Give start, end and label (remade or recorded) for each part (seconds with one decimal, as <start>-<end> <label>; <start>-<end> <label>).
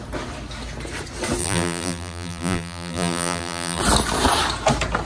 0.0-1.4 recorded; 1.4-3.8 remade; 3.8-5.0 recorded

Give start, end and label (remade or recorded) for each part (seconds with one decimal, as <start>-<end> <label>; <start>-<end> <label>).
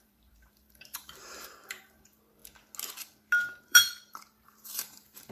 0.0-2.4 remade; 2.4-3.6 recorded; 3.6-5.3 remade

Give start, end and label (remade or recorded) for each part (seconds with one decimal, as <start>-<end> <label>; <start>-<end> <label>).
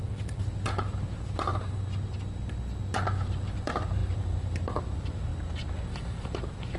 0.0-1.5 remade; 1.5-3.1 recorded; 3.1-5.3 remade; 5.3-5.9 recorded; 5.9-6.8 remade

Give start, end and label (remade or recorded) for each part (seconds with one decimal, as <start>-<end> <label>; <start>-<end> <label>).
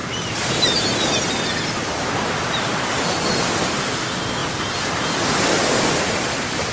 0.0-3.1 remade; 3.1-4.4 recorded; 4.4-5.3 remade; 5.3-6.7 recorded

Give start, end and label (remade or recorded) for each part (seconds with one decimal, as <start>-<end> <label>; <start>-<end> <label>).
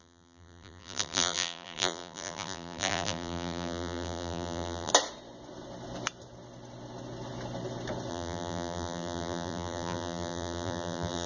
0.0-4.9 remade; 4.9-8.1 recorded; 8.1-11.3 remade